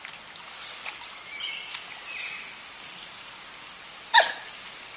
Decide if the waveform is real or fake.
real